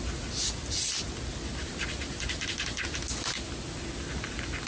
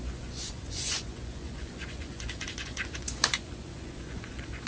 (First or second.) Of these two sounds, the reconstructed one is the second